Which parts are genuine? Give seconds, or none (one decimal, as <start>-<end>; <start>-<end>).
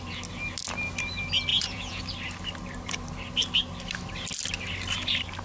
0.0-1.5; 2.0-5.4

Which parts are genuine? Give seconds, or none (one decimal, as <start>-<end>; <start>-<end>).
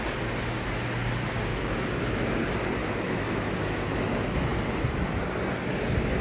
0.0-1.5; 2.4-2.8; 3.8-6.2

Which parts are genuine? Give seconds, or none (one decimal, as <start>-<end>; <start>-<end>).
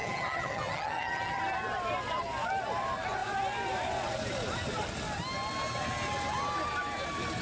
1.4-7.4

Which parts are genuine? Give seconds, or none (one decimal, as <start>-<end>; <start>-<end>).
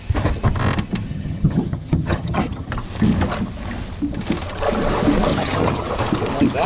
0.0-1.1; 2.7-5.3; 5.9-6.7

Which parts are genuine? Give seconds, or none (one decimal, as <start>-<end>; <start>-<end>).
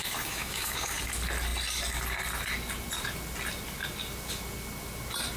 1.0-5.4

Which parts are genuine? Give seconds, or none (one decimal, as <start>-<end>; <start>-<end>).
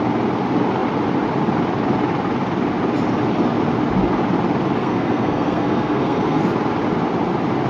0.0-4.8; 6.4-7.7